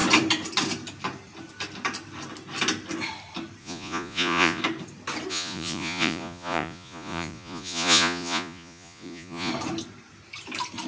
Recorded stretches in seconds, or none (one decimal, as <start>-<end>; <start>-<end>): 0.0-3.6; 4.6-5.3; 9.5-10.9